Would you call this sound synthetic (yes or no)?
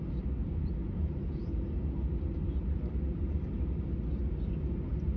no